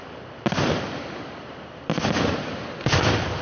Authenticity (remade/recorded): remade